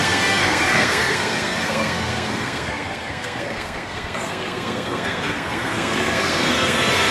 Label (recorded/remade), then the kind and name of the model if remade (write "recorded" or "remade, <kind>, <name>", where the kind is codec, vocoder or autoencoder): remade, codec, SNAC